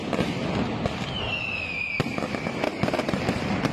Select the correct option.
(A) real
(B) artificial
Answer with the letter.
A